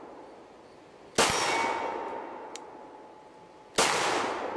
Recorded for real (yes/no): yes